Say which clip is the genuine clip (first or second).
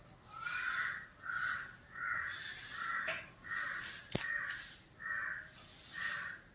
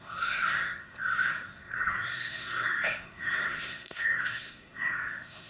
first